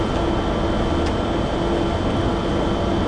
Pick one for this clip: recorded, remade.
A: recorded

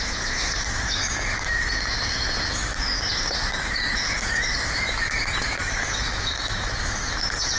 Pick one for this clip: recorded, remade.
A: remade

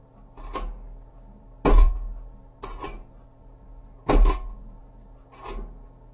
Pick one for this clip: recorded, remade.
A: recorded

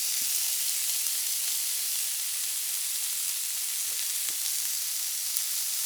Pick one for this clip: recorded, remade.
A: recorded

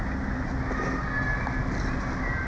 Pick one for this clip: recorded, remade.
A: recorded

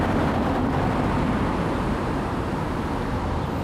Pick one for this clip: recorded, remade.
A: recorded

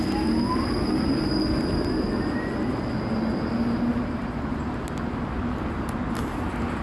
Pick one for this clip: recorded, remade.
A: recorded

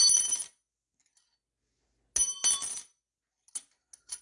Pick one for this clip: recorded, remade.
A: recorded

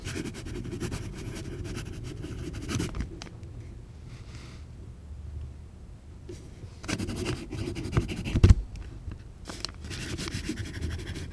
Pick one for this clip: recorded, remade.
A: recorded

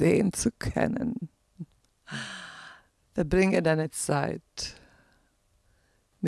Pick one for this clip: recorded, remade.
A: recorded